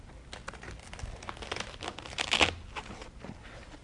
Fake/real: real